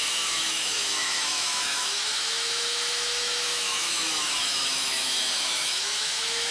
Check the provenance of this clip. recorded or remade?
remade